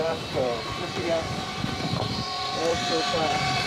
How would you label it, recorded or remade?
remade